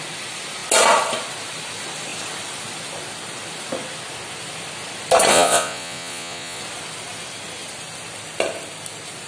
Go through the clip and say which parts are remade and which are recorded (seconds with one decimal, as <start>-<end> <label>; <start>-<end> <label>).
0.0-5.3 recorded; 5.3-6.6 remade; 6.6-9.3 recorded